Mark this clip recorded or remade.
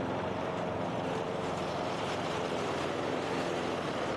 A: remade